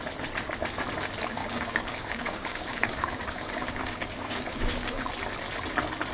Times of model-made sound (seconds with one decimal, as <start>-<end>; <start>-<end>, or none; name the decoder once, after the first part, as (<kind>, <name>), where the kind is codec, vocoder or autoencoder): 1.4-5.1 (codec, DAC)